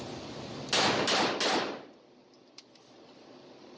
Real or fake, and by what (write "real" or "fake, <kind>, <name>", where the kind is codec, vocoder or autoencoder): real